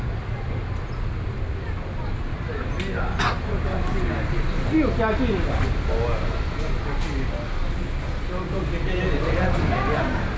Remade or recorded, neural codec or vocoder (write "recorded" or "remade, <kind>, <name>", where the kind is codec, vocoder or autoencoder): recorded